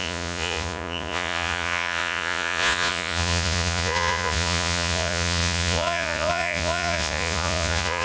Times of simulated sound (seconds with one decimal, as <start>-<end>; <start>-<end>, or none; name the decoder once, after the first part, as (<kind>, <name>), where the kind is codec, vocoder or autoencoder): 0.0-8.0 (vocoder, Vocos)